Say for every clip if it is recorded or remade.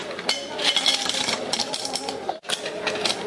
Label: recorded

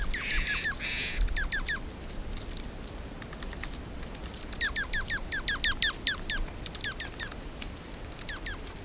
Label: recorded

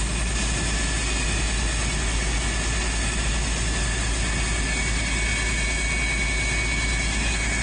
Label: recorded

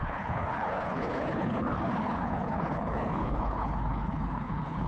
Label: remade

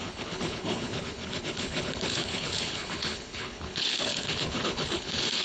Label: remade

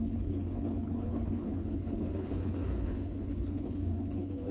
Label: remade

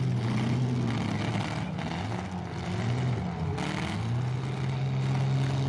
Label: recorded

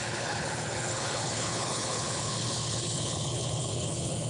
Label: remade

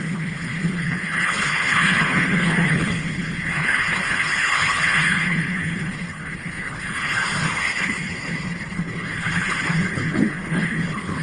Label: remade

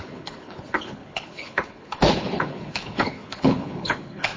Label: remade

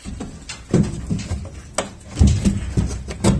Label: recorded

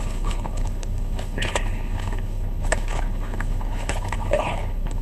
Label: remade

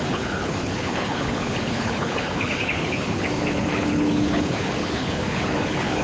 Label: remade